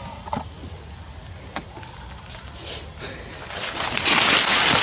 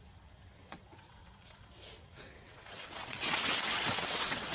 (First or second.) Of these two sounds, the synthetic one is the second